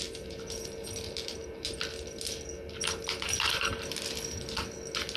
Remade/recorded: recorded